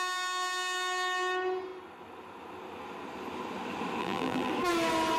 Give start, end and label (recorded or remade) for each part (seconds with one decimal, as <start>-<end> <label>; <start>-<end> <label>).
0.0-4.0 recorded; 4.0-4.5 remade; 4.5-5.2 recorded